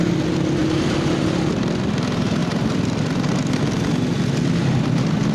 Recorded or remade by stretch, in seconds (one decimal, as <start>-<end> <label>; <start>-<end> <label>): 0.0-0.6 recorded; 0.6-1.8 remade; 1.8-2.4 recorded; 2.4-3.3 remade; 3.3-5.3 recorded